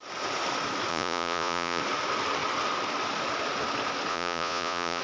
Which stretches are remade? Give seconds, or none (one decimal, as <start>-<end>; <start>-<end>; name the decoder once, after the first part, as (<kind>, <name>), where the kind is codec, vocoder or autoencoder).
0.9-1.8 (vocoder, Vocos); 4.1-5.0